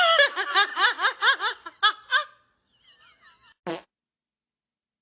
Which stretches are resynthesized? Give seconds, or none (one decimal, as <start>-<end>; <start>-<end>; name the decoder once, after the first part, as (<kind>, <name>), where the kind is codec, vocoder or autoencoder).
none